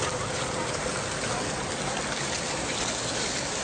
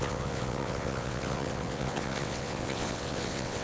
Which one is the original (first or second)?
first